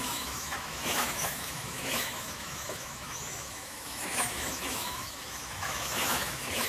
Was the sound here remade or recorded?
remade